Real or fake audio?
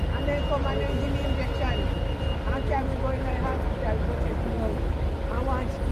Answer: real